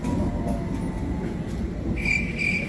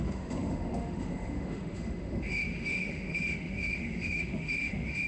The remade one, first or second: second